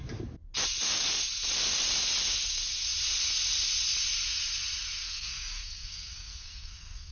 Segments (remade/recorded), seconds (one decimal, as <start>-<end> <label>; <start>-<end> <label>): 0.0-5.0 recorded; 5.0-7.1 remade

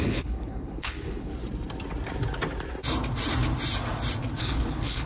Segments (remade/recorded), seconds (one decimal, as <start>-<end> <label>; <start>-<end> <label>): 0.0-1.3 remade; 1.3-4.4 recorded; 4.4-5.1 remade

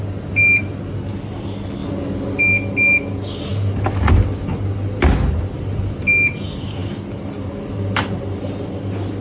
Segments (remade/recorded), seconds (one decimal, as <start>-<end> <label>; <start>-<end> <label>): 0.0-9.2 recorded

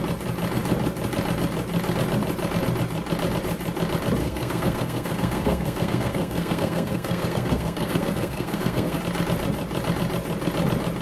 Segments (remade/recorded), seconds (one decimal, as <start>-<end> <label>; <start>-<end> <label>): 0.0-4.2 recorded; 4.2-9.0 remade; 9.0-11.0 recorded

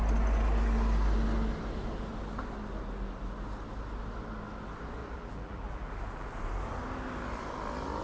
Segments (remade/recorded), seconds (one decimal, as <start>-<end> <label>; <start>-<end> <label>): 0.0-5.0 recorded; 5.0-6.3 remade; 6.3-8.0 recorded

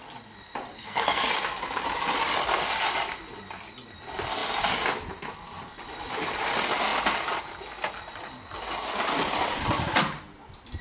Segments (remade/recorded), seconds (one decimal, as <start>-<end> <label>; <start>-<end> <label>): 0.0-0.7 recorded; 0.7-1.3 remade; 1.3-10.8 recorded

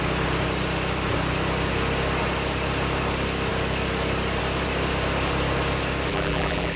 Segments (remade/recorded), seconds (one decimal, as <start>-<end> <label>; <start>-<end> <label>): 0.0-6.1 recorded; 6.1-6.8 remade

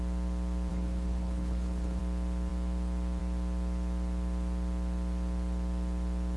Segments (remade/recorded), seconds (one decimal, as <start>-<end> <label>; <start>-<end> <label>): 0.0-0.7 recorded; 0.7-2.0 remade; 2.0-6.4 recorded